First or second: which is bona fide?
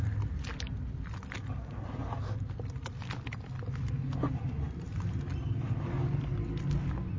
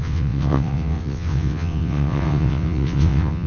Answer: first